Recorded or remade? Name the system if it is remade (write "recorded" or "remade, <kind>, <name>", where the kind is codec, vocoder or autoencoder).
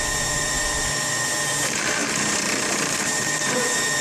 remade, vocoder, BigVGAN v2